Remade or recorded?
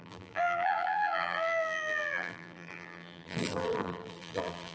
remade